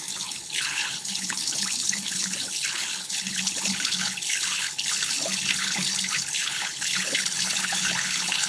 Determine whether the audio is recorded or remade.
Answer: remade